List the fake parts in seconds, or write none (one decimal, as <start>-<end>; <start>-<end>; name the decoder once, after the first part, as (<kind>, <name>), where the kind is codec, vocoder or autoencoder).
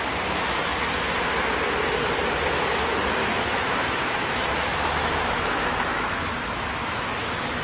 3.2-7.6 (autoencoder, DAC-VAE)